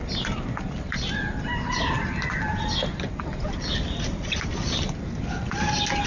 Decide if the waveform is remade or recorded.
recorded